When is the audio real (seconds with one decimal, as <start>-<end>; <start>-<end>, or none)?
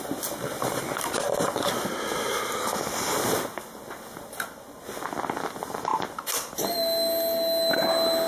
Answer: 0.0-8.3